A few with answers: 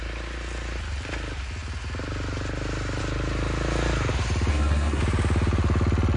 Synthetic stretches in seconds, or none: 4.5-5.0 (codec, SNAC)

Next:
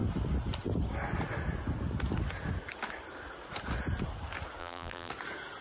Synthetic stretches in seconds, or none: 4.6-5.1 (vocoder, BigVGAN v2)

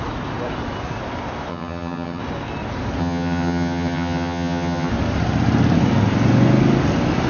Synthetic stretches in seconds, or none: 1.5-2.2 (vocoder, HiFi-GAN); 3.0-4.9